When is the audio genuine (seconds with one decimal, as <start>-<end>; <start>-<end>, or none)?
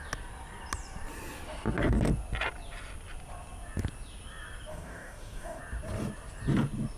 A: 0.0-4.7; 5.6-7.0